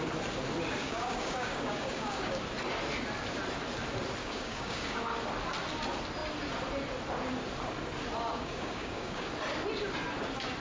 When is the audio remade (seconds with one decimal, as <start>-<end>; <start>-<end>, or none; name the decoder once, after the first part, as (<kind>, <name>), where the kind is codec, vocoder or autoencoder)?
0.8-2.4 (codec, DAC); 4.2-5.0; 8.3-9.3